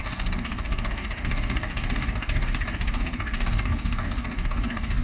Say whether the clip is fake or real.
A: fake